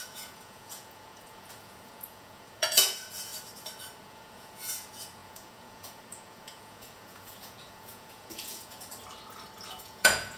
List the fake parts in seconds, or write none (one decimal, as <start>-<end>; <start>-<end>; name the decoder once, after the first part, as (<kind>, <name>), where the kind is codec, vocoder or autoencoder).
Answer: 0.0-3.3 (vocoder, Vocos); 4.0-8.9; 9.7-10.4